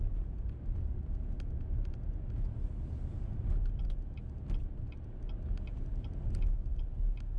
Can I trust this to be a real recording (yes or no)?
yes